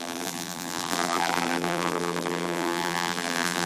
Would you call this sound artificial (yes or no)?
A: yes